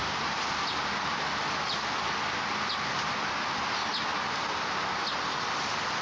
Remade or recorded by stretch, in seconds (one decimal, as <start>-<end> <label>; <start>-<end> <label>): 0.0-6.0 recorded